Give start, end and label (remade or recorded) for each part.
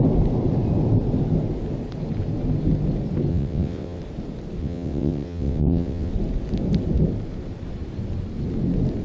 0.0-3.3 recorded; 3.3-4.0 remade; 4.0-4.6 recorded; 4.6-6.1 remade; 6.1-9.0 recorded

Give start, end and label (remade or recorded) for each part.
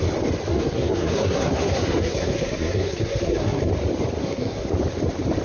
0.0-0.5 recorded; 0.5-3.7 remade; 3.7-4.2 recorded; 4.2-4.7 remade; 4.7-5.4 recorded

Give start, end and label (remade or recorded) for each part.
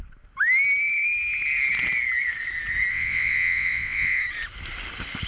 0.0-2.9 recorded; 2.9-4.2 remade; 4.2-5.3 recorded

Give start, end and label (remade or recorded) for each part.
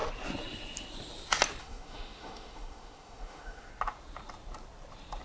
0.0-1.6 recorded; 1.6-3.7 remade; 3.7-5.2 recorded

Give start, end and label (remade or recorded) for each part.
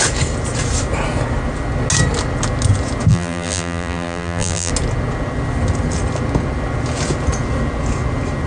0.0-3.1 recorded; 3.1-4.7 remade; 4.7-8.5 recorded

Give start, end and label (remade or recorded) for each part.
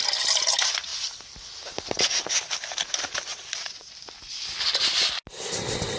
0.0-3.3 recorded; 3.3-3.9 remade; 3.9-6.0 recorded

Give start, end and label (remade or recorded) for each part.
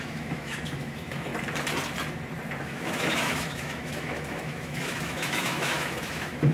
0.0-1.3 remade; 1.3-2.6 recorded; 2.6-6.5 remade